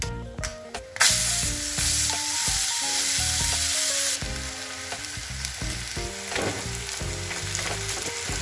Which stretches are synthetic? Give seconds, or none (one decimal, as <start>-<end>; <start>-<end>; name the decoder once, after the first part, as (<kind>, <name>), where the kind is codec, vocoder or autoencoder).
none